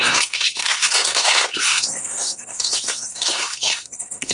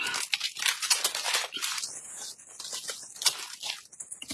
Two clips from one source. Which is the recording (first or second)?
second